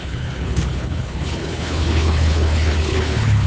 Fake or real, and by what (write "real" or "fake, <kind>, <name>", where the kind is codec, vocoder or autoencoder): fake, codec, HILCodec